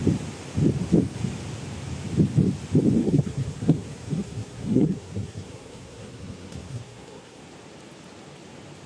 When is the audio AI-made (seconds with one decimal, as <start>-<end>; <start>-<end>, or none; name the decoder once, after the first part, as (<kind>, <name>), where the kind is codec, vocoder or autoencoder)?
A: 3.0-7.4 (codec, SNAC)